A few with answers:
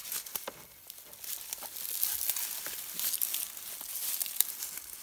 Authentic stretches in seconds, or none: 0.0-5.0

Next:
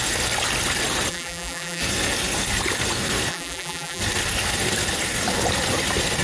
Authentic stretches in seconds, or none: 0.0-1.1; 1.8-3.3; 4.0-6.2

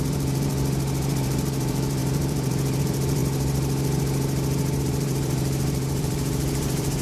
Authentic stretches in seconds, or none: 0.5-1.1; 3.2-4.8